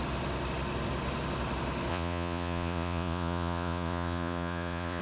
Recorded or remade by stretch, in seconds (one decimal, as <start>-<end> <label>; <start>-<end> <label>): 0.0-1.9 recorded; 1.9-5.0 remade